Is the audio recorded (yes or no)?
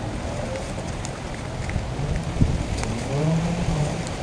no